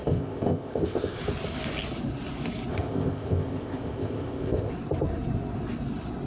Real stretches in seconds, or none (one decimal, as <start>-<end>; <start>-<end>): 1.2-2.7; 4.7-6.3